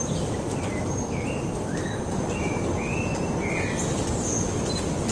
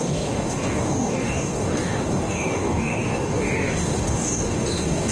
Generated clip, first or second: second